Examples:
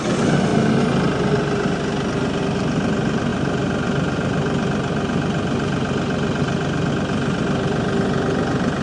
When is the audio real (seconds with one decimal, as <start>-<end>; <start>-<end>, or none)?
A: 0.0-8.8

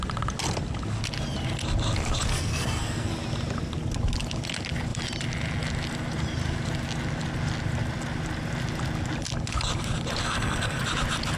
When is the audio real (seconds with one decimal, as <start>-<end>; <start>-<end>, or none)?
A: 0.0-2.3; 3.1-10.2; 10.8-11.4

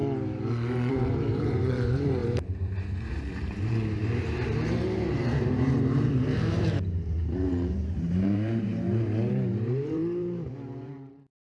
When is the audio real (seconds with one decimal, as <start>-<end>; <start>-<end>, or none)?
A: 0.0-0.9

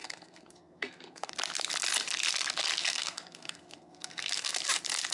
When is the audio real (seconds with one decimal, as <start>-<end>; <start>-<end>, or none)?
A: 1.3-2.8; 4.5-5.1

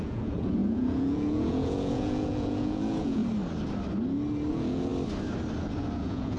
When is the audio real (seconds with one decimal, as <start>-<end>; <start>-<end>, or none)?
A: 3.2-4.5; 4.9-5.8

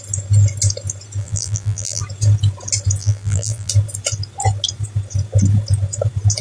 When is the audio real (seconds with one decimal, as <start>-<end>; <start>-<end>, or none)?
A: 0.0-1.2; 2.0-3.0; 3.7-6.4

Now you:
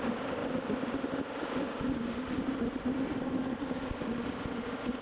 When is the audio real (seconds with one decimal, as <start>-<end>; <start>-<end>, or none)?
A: 0.0-5.0